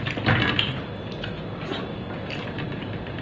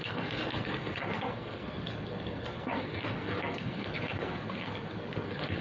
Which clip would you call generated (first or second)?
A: second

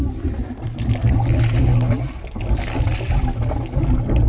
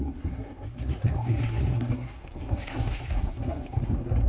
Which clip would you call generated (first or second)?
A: second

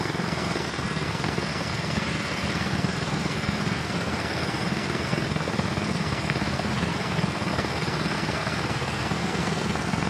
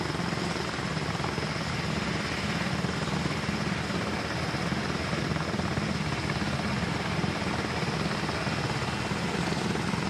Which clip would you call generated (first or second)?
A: first